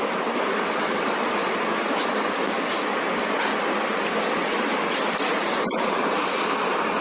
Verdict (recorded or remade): recorded